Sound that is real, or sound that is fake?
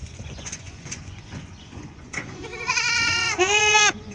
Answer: fake